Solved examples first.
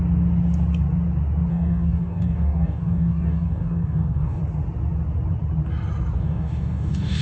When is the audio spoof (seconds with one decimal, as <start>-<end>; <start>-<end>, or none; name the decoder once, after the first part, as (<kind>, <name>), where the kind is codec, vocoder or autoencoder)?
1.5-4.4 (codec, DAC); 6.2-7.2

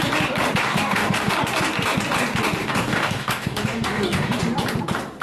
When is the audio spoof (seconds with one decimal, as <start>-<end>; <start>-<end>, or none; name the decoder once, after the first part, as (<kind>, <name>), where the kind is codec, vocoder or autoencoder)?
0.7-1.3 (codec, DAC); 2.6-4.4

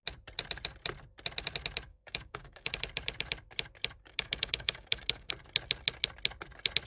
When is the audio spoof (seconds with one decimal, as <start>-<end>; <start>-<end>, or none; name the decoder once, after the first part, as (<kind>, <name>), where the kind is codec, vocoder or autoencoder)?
1.9-2.7 (codec, DAC); 4.1-5.3

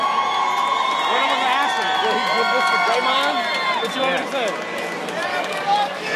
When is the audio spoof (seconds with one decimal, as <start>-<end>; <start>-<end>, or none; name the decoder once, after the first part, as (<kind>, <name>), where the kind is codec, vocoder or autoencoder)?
5.3-6.2 (codec, DAC)

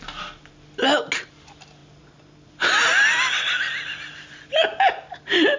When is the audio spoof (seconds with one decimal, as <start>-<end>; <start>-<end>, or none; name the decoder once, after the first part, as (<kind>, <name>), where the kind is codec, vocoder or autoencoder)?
none